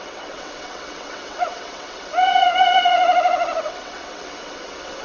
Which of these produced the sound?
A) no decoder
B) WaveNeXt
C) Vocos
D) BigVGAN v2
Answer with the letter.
B